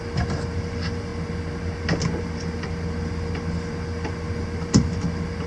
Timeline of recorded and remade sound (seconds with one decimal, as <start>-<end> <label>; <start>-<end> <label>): 0.0-1.1 remade; 1.1-2.2 recorded; 2.2-5.5 remade